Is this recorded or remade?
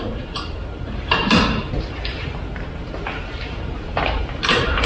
remade